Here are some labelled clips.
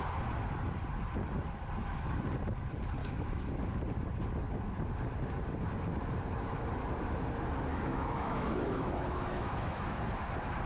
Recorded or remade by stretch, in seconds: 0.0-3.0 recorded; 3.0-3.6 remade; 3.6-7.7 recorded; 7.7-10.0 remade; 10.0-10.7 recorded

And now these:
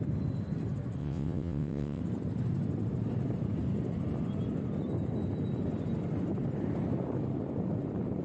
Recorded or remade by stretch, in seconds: 0.0-1.0 recorded; 1.0-2.0 remade; 2.0-8.2 recorded